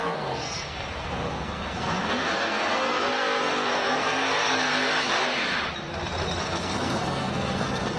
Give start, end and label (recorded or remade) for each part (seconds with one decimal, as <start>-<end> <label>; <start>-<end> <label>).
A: 0.0-4.7 remade; 4.7-6.4 recorded; 6.4-8.0 remade

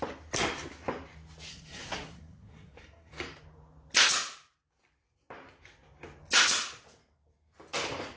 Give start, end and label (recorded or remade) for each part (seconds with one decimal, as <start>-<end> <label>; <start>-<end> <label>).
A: 0.0-1.5 recorded; 1.5-3.1 remade; 3.1-8.2 recorded

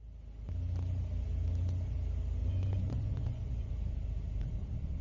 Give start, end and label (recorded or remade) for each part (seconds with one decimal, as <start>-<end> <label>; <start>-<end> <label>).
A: 0.0-2.4 recorded; 2.4-3.7 remade; 3.7-5.0 recorded

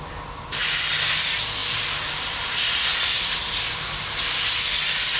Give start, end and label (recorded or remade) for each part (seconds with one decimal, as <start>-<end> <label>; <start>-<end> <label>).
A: 0.0-5.2 recorded

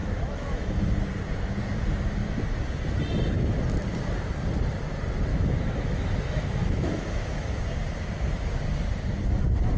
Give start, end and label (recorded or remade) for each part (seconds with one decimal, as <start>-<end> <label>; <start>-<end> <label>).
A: 0.0-0.9 remade; 0.9-5.3 recorded; 5.3-7.6 remade; 7.6-9.8 recorded

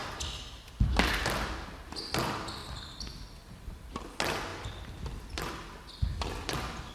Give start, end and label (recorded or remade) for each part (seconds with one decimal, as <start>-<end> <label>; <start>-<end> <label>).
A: 0.0-2.6 recorded; 2.6-4.1 remade; 4.1-4.5 recorded; 4.5-5.5 remade; 5.5-6.9 recorded

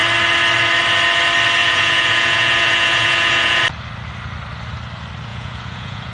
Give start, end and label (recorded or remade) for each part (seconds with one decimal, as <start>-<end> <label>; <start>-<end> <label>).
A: 0.0-1.6 recorded; 1.6-3.6 remade; 3.6-5.3 recorded; 5.3-6.1 remade

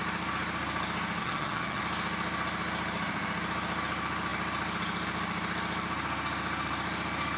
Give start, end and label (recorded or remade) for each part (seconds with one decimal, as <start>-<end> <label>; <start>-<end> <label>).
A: 0.0-1.2 recorded; 1.2-1.8 remade; 1.8-7.4 recorded